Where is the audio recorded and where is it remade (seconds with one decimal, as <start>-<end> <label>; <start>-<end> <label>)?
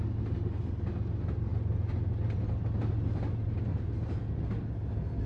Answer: 0.0-5.3 recorded